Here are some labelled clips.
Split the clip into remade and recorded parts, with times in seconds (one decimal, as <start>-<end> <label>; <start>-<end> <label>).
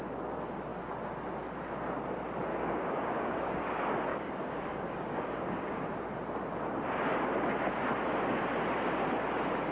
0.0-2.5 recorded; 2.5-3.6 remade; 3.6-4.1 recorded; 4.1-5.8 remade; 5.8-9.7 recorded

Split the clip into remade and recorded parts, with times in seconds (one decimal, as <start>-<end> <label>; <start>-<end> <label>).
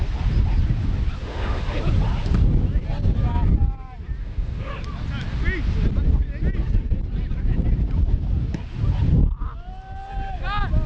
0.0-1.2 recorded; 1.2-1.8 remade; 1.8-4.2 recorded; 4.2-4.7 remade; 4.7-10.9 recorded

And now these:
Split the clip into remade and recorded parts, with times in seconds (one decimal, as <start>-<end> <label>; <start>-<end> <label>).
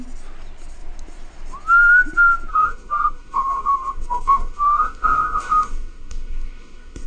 0.0-2.5 recorded; 2.5-7.1 remade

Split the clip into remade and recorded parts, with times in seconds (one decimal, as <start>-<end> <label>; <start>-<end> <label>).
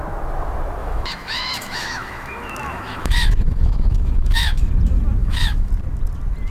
0.0-0.8 recorded; 0.8-4.7 remade; 4.7-5.2 recorded; 5.2-5.7 remade; 5.7-6.5 recorded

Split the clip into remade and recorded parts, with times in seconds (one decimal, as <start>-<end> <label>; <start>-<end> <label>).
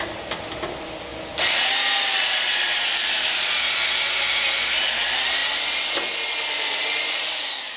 0.0-7.8 recorded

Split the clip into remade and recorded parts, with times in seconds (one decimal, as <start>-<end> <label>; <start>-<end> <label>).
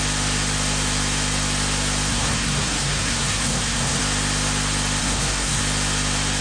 0.0-2.1 recorded; 2.1-4.0 remade; 4.0-5.0 recorded; 5.0-5.6 remade; 5.6-6.4 recorded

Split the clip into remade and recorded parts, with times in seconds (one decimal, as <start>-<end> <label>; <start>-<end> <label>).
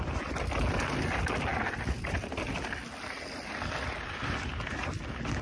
0.0-5.4 recorded